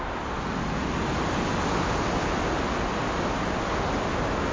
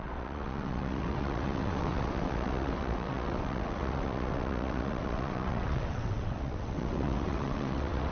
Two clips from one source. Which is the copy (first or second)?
second